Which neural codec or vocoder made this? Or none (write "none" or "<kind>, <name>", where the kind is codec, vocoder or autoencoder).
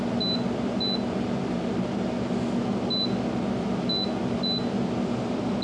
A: none